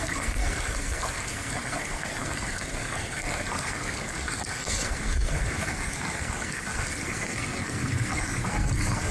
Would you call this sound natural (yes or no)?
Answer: no